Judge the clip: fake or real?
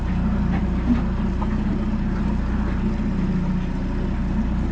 real